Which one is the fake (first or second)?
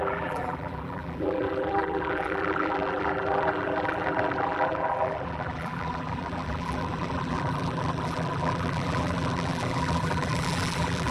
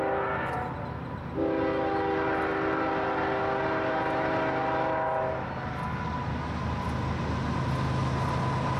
first